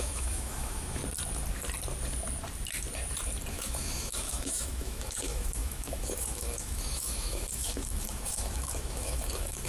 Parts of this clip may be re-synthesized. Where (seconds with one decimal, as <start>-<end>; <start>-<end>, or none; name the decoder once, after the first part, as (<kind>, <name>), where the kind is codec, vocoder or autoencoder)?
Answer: 0.0-1.0 (autoencoder, DAC-VAE); 3.5-9.7